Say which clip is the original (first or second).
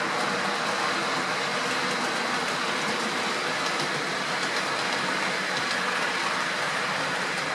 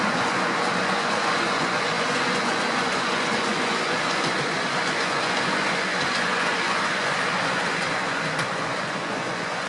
first